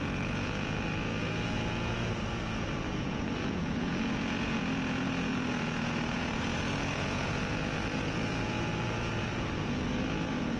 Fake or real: fake